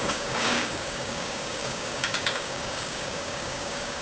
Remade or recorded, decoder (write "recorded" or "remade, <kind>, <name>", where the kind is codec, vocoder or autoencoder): remade, codec, DAC